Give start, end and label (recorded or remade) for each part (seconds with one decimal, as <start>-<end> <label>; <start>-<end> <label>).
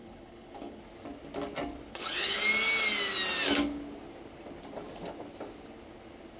0.0-0.8 remade; 0.8-1.9 recorded; 1.9-2.4 remade; 2.4-6.4 recorded